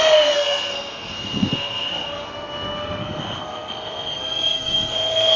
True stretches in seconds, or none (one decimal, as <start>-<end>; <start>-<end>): none